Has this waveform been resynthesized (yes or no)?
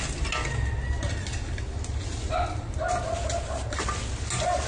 no